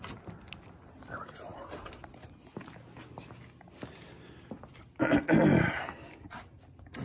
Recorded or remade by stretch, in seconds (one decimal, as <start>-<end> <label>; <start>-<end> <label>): 0.0-7.0 recorded

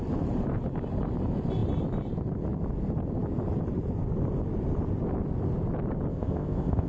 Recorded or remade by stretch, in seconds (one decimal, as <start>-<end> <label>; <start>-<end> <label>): 0.0-6.1 recorded; 6.1-6.9 remade

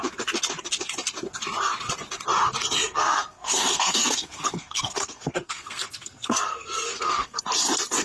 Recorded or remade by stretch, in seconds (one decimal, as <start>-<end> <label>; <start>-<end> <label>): 0.0-2.8 recorded; 2.8-7.4 remade; 7.4-8.0 recorded

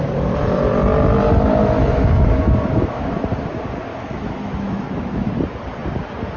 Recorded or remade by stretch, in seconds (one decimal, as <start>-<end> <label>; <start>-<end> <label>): 0.0-1.5 recorded; 1.5-3.1 remade; 3.1-3.9 recorded; 3.9-5.3 remade; 5.3-6.4 recorded

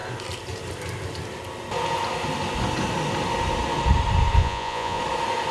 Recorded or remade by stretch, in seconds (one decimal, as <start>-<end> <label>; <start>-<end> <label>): 0.0-4.4 recorded; 4.4-5.0 remade; 5.0-5.5 recorded

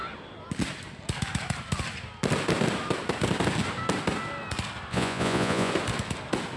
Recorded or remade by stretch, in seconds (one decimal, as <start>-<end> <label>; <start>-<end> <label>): 0.0-4.9 recorded; 4.9-5.7 remade; 5.7-6.6 recorded

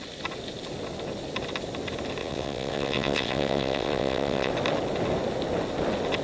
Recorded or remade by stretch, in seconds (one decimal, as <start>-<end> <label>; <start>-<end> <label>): 0.0-2.2 recorded; 2.2-4.5 remade; 4.5-6.2 recorded